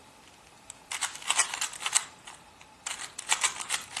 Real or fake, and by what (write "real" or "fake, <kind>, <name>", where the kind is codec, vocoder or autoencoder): real